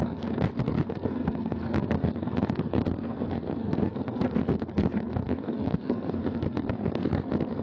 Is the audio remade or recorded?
remade